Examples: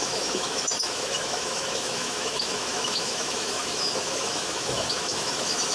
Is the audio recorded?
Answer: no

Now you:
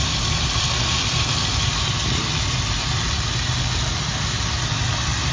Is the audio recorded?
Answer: yes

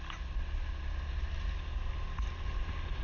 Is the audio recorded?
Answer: yes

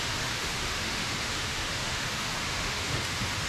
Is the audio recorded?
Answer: no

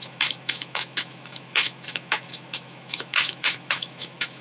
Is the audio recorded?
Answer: no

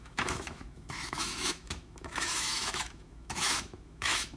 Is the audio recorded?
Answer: no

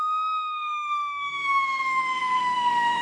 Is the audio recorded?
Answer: no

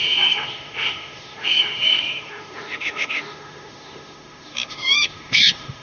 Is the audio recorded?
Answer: no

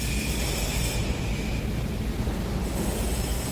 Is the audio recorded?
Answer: yes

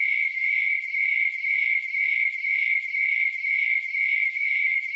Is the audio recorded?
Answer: no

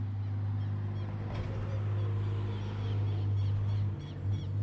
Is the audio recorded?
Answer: yes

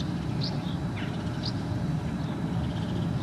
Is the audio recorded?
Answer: yes